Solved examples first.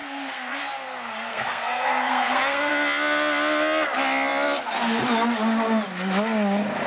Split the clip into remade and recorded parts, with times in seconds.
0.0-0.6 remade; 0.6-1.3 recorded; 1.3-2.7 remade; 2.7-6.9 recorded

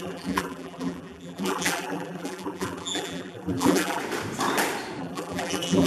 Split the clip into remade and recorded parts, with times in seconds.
0.0-4.0 remade; 4.0-5.0 recorded; 5.0-5.9 remade

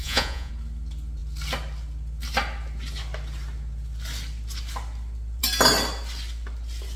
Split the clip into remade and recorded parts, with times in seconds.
0.0-0.5 remade; 0.5-7.0 recorded

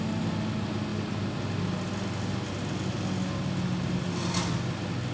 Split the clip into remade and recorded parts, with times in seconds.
0.0-5.1 recorded

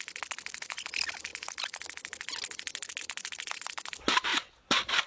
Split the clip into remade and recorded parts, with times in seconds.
0.0-5.1 recorded